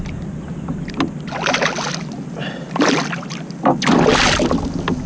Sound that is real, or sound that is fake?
real